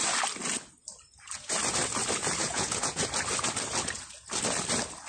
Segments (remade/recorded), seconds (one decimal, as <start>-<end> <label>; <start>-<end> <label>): 0.0-2.4 recorded; 2.4-3.0 remade; 3.0-5.1 recorded